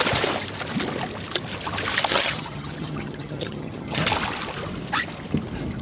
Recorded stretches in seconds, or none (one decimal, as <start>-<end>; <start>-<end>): 0.0-2.1; 4.0-5.8